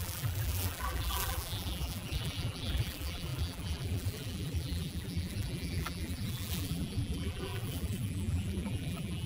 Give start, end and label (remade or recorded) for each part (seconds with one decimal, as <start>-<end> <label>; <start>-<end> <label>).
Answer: 0.0-9.3 remade

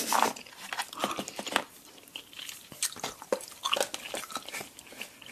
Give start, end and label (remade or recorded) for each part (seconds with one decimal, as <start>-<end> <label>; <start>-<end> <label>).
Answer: 0.0-5.3 recorded

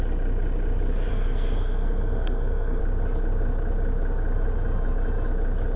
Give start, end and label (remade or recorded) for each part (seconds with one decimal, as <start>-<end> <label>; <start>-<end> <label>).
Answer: 0.0-1.1 recorded; 1.1-2.8 remade; 2.8-5.8 recorded

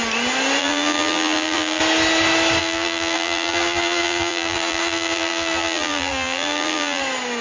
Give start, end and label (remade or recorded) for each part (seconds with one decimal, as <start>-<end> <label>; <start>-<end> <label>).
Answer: 0.0-0.6 recorded; 0.6-1.8 remade; 1.8-2.6 recorded; 2.6-7.0 remade; 7.0-7.4 recorded

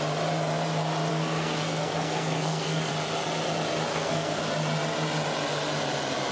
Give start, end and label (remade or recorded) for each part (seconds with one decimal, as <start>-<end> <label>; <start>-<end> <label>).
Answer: 0.0-1.1 recorded; 1.1-2.9 remade; 2.9-3.9 recorded; 3.9-4.4 remade; 4.4-6.3 recorded